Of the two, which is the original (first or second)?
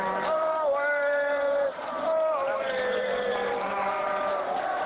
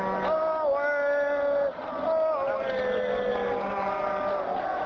second